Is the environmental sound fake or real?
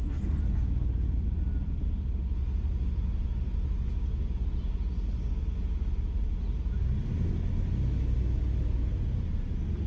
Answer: real